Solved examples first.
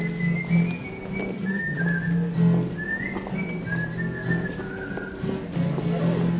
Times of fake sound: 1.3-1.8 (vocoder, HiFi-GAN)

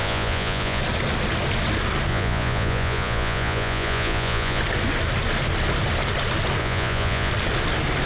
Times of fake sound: 0.0-0.8 (vocoder, Vocos); 2.1-4.6; 6.6-7.3

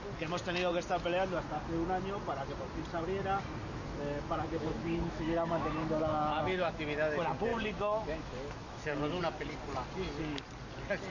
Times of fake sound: 3.6-6.8 (autoencoder, DAC-VAE); 7.5-9.2

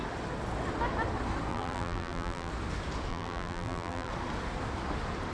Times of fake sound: 1.5-2.5 (vocoder, BigVGAN v2); 3.1-4.1

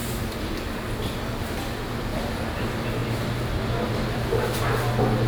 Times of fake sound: 3.0-4.6 (vocoder, BigVGAN v2)

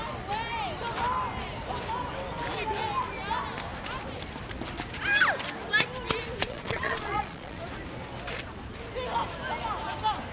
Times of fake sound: 6.4-7.6 (vocoder, Vocos)

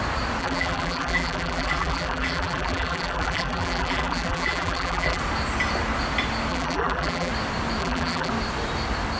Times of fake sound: 0.4-5.2 (vocoder, BigVGAN v2); 6.5-7.3; 7.8-8.3